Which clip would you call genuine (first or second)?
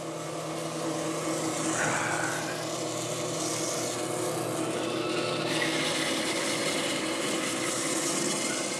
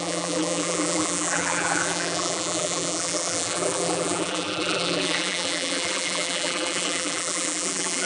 first